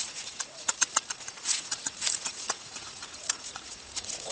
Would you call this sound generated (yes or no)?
yes